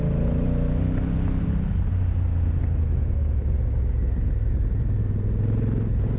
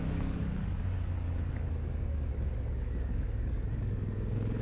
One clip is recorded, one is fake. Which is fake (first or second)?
second